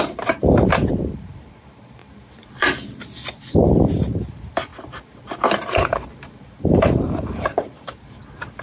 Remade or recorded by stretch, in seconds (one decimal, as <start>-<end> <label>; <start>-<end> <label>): 0.0-8.6 remade